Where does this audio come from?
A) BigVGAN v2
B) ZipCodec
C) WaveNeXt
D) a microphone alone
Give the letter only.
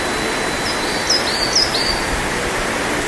D